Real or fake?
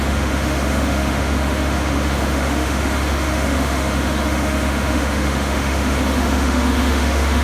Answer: fake